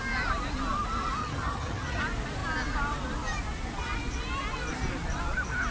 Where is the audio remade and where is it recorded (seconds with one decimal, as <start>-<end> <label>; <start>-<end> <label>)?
0.0-1.2 recorded; 1.2-2.0 remade; 2.0-5.7 recorded